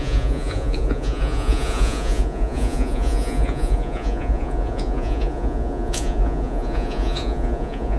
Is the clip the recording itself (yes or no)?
no